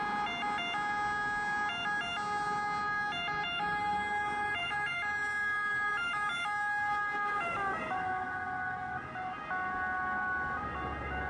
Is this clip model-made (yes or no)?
no